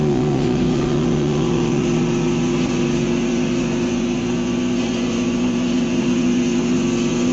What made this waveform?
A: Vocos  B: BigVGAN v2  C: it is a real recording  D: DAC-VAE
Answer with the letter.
A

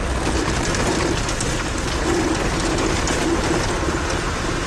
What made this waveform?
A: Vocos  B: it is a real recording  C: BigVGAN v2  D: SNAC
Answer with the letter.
B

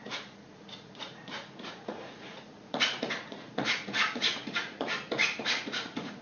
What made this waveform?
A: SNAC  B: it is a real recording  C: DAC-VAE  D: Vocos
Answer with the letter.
D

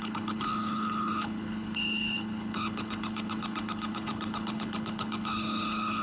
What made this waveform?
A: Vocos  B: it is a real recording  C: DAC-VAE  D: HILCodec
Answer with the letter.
D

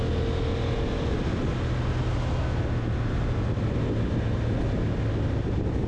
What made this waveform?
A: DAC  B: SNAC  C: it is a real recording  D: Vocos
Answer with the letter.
C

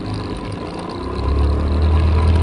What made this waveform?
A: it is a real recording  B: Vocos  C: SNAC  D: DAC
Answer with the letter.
A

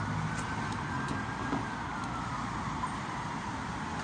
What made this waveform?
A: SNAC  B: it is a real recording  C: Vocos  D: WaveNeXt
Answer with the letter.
B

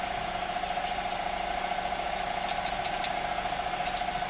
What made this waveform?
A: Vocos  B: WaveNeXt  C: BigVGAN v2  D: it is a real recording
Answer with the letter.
D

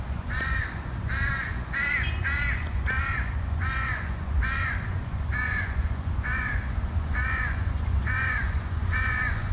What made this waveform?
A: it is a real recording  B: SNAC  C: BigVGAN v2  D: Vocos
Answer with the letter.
D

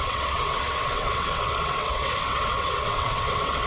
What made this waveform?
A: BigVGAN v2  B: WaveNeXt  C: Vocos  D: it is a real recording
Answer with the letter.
B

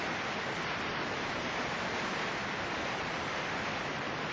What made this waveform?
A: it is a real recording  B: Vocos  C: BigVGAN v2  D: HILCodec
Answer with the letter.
A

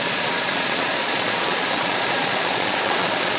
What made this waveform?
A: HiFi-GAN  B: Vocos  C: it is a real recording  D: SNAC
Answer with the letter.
B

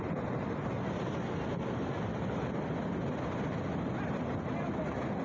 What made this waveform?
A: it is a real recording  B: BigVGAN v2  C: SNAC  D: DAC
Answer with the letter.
A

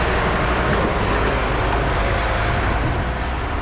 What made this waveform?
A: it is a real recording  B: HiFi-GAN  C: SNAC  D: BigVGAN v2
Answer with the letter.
A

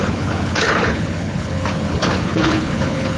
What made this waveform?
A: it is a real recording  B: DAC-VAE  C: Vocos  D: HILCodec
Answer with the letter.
D